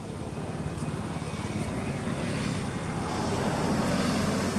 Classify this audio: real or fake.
real